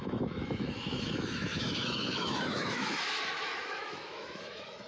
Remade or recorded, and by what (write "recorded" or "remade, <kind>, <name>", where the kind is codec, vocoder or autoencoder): remade, autoencoder, DAC-VAE